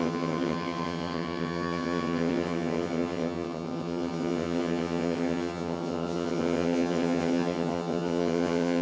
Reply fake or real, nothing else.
fake